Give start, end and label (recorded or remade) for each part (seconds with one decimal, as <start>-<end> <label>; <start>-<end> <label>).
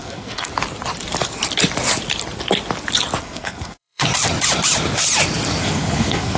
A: 0.0-0.5 remade; 0.5-3.2 recorded; 3.2-4.0 remade; 4.0-5.6 recorded; 5.6-6.4 remade